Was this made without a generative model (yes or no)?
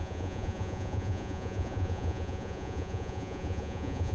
no